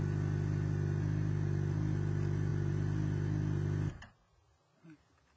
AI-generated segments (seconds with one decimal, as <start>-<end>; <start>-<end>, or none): none